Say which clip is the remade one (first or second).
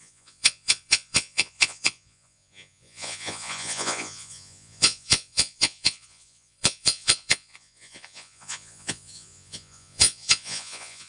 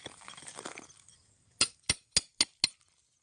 first